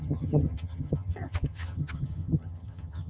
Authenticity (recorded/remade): remade